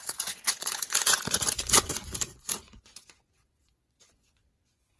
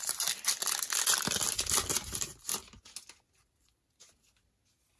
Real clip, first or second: second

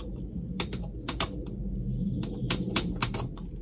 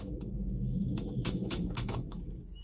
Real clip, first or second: first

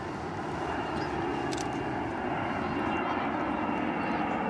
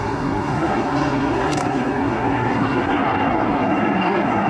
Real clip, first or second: first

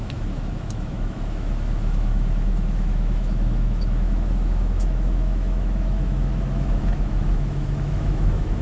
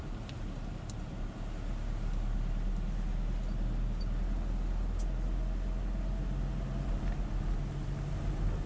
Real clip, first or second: second